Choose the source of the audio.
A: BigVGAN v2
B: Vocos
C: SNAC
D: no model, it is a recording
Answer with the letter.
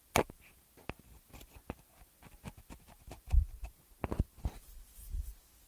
D